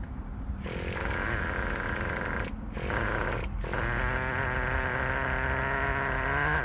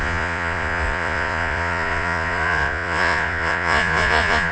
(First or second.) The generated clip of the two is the second